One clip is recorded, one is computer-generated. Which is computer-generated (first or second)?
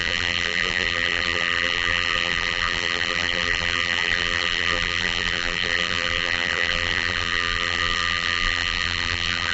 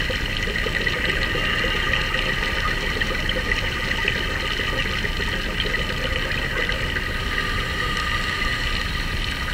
first